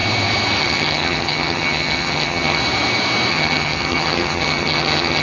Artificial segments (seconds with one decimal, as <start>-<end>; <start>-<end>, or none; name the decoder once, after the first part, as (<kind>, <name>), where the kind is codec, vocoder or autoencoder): 0.6-2.6 (vocoder, HiFi-GAN); 3.3-5.2